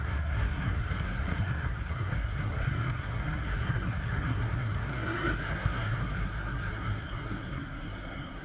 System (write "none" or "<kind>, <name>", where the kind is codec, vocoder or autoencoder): codec, SNAC